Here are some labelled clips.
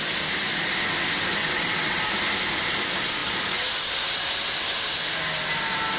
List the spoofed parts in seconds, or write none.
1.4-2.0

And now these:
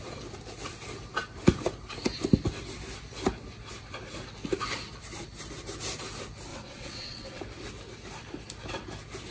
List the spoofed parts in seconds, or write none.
6.5-7.4

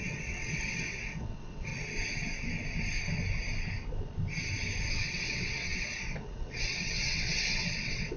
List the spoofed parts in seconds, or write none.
0.0-1.7; 4.9-8.2